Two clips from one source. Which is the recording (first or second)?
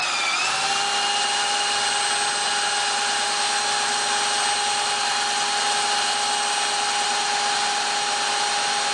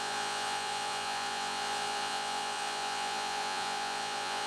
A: first